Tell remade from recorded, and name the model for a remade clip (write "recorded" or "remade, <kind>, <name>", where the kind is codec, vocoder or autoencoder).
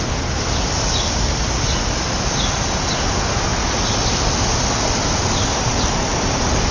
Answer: recorded